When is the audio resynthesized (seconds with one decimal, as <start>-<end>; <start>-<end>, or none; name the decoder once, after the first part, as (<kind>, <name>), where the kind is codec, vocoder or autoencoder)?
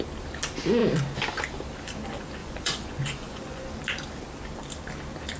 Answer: 2.4-3.7 (vocoder, Vocos)